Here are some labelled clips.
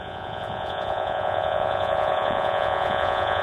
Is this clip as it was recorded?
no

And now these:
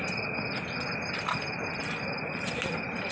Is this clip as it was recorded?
yes